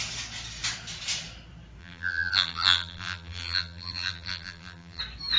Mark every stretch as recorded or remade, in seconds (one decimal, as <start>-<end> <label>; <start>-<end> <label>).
0.0-1.8 recorded; 1.8-5.0 remade; 5.0-5.4 recorded